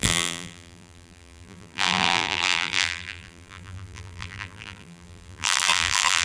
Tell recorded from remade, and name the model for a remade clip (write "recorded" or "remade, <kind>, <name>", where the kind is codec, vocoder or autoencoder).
remade, vocoder, BigVGAN v2